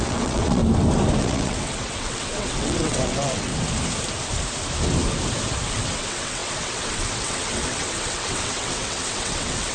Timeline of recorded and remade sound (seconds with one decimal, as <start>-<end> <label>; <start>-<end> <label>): 0.0-0.6 remade; 0.6-1.2 recorded; 1.2-3.5 remade; 3.5-5.7 recorded; 5.7-9.7 remade